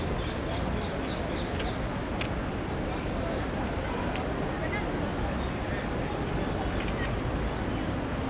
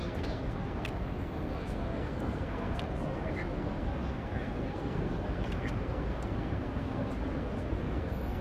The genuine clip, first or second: first